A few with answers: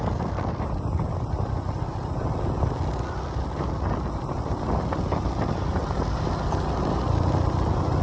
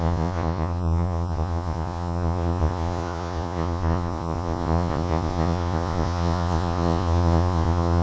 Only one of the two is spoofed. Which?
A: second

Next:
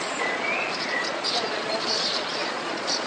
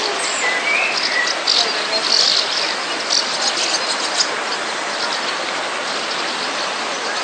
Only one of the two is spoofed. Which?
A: first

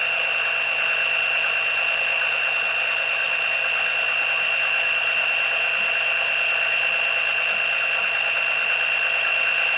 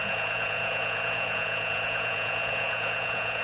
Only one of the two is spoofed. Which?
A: second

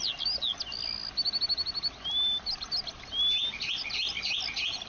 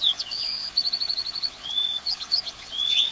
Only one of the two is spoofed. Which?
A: second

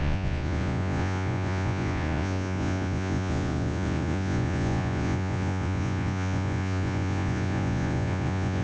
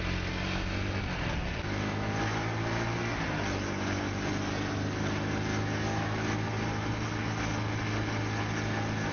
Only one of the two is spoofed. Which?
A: first